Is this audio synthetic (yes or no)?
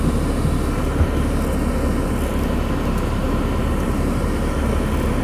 no